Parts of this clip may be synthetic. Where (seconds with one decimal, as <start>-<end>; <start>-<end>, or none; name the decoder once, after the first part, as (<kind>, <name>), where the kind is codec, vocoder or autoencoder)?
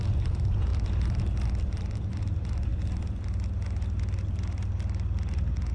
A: 0.7-2.2 (vocoder, BigVGAN v2)